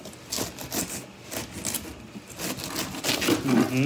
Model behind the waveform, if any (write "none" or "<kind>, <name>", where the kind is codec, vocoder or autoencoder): none